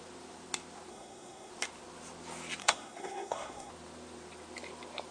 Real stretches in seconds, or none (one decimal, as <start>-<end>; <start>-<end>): 0.0-0.9; 1.5-2.6; 3.7-5.1